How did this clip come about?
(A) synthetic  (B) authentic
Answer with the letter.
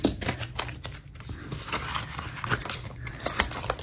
B